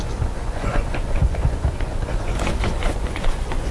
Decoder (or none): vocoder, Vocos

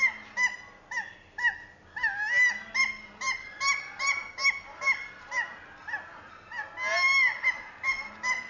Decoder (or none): none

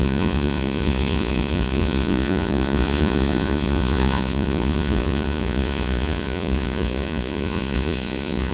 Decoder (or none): vocoder, Vocos